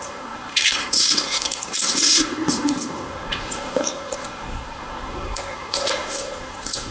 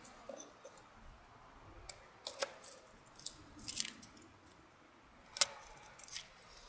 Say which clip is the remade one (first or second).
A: first